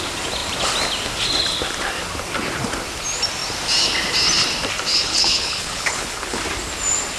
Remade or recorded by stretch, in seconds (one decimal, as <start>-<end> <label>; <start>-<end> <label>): 0.0-4.9 recorded; 4.9-6.4 remade; 6.4-7.2 recorded

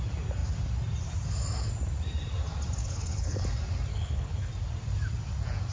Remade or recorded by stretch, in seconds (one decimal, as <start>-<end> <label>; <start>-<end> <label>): 0.0-2.8 recorded; 2.8-3.4 remade; 3.4-3.9 recorded; 3.9-4.5 remade; 4.5-5.7 recorded

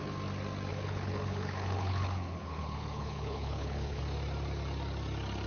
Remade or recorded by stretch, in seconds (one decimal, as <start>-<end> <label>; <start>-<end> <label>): 0.0-0.7 recorded; 0.7-4.0 remade; 4.0-5.5 recorded

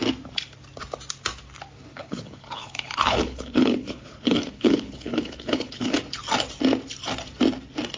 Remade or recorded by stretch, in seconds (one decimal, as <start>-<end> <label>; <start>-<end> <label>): 0.0-1.9 recorded; 1.9-6.0 remade; 6.0-8.0 recorded